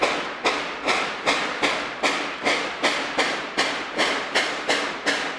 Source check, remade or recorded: recorded